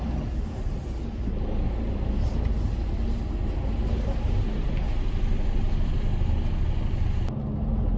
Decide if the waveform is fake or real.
real